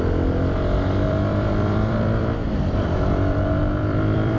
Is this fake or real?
fake